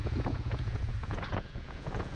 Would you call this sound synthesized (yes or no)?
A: yes